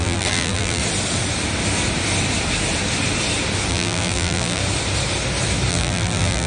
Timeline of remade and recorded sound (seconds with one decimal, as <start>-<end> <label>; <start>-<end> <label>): 0.0-0.8 remade; 0.8-3.7 recorded; 3.7-4.6 remade; 4.6-5.7 recorded; 5.7-6.5 remade